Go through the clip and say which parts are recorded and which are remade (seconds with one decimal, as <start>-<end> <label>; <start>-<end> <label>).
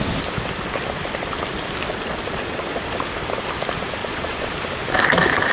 0.0-1.9 recorded; 1.9-3.0 remade; 3.0-4.0 recorded; 4.0-4.5 remade; 4.5-5.5 recorded